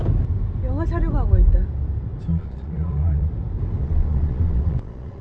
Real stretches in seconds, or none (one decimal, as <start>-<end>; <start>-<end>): 0.0-2.3; 3.3-3.8